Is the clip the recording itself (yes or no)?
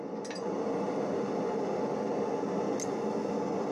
yes